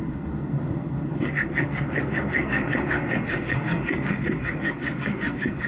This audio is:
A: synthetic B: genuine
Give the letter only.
A